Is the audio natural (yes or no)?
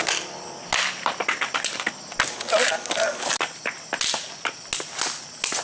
yes